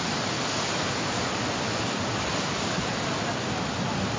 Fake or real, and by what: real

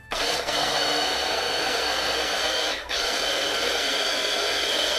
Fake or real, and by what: fake, codec, SNAC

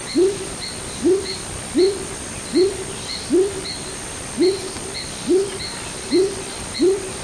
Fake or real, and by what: real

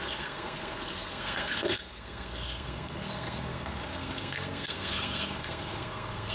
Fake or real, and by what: fake, codec, SNAC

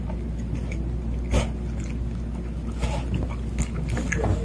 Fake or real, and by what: real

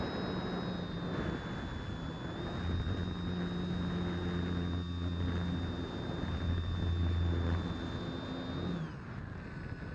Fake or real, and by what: real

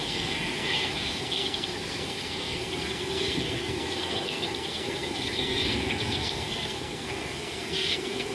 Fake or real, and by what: fake, codec, SNAC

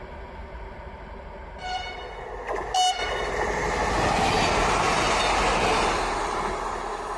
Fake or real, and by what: real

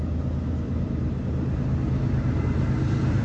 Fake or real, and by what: real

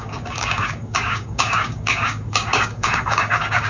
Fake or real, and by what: fake, codec, DAC